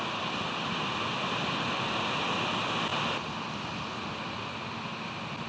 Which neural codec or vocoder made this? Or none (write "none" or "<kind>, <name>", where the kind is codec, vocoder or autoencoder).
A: none